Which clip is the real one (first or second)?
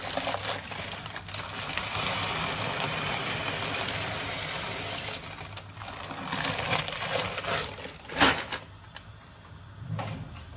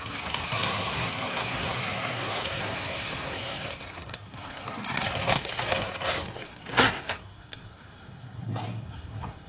first